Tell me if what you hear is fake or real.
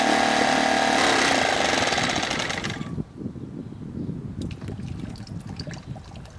real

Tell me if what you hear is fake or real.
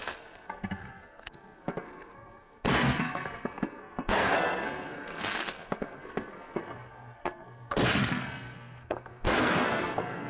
fake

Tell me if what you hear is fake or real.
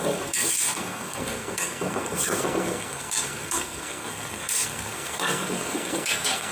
fake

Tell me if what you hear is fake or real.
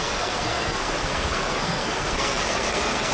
fake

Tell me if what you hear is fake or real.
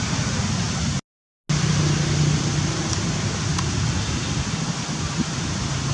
real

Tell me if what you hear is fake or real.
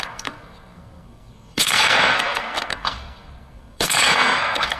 fake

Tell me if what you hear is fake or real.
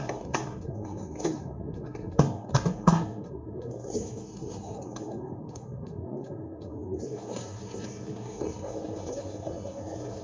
fake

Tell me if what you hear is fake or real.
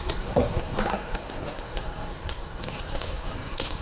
fake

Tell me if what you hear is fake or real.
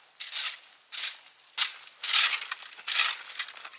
real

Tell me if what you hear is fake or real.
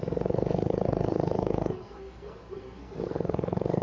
fake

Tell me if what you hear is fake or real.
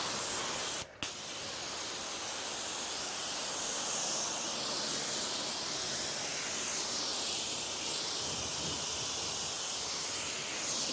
real